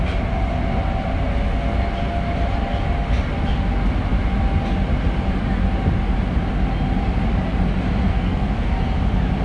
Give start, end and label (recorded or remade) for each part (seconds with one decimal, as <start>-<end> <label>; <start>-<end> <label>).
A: 0.0-8.1 recorded; 8.1-8.7 remade; 8.7-9.4 recorded